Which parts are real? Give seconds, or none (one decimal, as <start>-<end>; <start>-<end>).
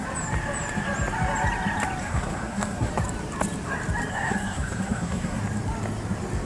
0.0-2.0; 2.9-4.1; 5.4-6.5